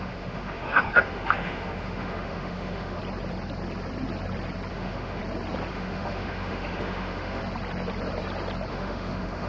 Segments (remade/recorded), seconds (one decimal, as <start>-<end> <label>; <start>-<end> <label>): 0.0-3.0 remade; 3.0-4.7 recorded; 4.7-5.2 remade; 5.2-5.7 recorded; 5.7-7.4 remade; 7.4-8.7 recorded; 8.7-9.5 remade